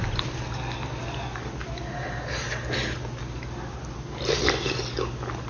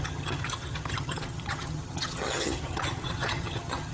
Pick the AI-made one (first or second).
second